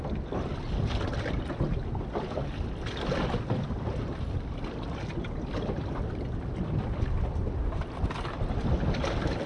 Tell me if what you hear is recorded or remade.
recorded